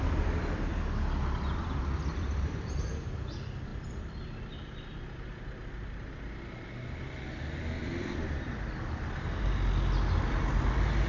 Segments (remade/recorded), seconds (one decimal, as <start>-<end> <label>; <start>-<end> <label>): 0.0-2.1 recorded; 2.1-3.1 remade; 3.1-7.8 recorded; 7.8-8.5 remade; 8.5-11.1 recorded